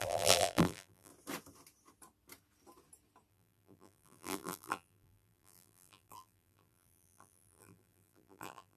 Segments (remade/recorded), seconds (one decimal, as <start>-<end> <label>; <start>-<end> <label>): 0.0-1.1 remade; 1.1-3.3 recorded; 3.3-8.8 remade